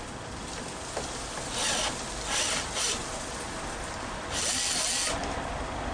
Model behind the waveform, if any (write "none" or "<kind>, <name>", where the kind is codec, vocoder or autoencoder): none